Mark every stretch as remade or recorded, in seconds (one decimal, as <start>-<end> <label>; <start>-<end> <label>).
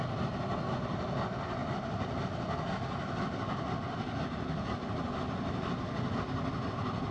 0.0-7.1 recorded